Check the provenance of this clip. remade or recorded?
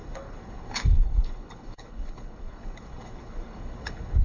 remade